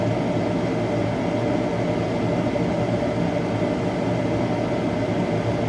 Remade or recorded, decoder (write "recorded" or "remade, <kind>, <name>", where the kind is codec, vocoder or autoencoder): recorded